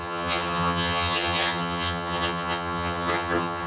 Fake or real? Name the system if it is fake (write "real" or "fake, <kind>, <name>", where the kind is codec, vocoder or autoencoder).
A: fake, vocoder, HiFi-GAN